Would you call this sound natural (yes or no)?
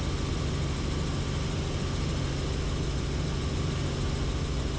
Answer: yes